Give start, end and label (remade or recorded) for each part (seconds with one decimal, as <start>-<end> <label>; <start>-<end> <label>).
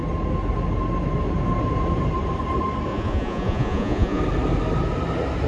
0.0-2.9 recorded; 2.9-4.2 remade; 4.2-5.5 recorded